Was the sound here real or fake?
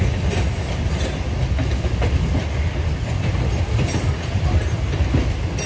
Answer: real